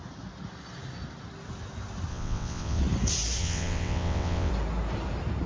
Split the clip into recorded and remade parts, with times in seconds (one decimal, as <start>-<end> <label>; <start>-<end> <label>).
0.0-2.1 recorded; 2.1-2.8 remade; 2.8-3.4 recorded; 3.4-4.5 remade; 4.5-5.5 recorded

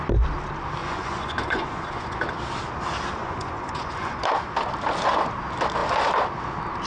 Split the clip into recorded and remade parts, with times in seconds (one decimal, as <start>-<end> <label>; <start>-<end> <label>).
0.0-0.8 recorded; 0.8-2.2 remade; 2.2-3.2 recorded; 3.2-4.2 remade; 4.2-6.9 recorded

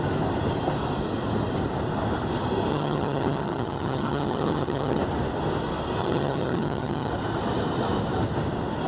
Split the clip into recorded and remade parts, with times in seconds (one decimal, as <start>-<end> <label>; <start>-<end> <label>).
0.0-2.7 recorded; 2.7-5.0 remade; 5.0-6.0 recorded; 6.0-7.1 remade; 7.1-8.9 recorded

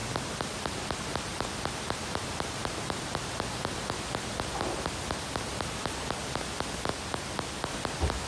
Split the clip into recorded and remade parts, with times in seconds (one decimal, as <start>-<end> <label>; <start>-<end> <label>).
0.0-8.3 recorded

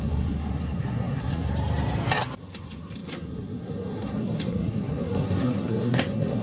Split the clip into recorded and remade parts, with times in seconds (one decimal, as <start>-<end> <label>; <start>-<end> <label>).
0.0-1.5 remade; 1.5-2.4 recorded; 2.4-6.4 remade

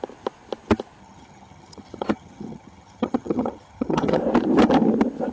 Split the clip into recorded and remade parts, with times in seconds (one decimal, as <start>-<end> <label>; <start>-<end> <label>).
0.0-1.0 recorded; 1.0-4.2 remade; 4.2-5.3 recorded

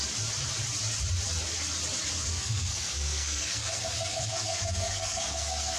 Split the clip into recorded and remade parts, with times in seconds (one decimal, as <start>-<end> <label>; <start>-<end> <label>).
0.0-2.3 recorded; 2.3-5.8 remade

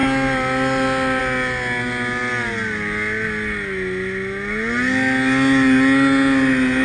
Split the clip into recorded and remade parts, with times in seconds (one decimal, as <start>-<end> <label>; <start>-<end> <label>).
0.0-6.8 recorded